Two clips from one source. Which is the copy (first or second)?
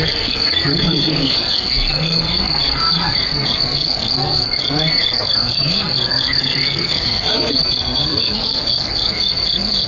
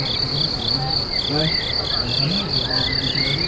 first